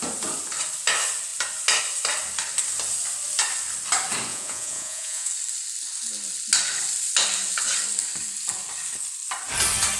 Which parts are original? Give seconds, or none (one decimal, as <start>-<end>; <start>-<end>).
0.0-4.3; 5.3-10.0